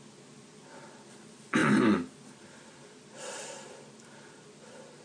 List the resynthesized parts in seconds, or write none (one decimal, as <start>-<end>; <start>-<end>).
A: none